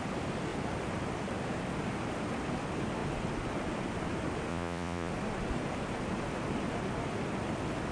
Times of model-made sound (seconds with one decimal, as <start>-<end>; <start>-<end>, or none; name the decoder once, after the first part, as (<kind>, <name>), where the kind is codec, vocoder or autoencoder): 4.5-5.1 (vocoder, Vocos)